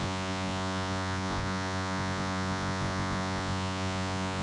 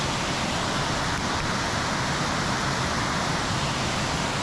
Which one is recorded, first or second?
second